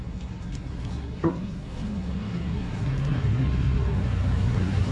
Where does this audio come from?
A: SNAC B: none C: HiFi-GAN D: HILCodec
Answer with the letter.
A